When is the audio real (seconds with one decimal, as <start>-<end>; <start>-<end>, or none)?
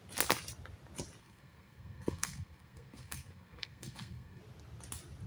0.0-1.2; 4.4-5.3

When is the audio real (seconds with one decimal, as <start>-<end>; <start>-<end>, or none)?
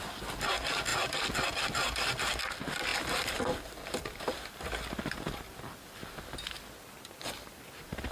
0.0-8.1